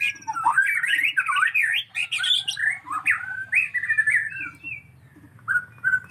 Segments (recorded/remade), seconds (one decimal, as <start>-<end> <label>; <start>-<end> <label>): 0.0-2.0 recorded; 2.0-2.8 remade; 2.8-6.1 recorded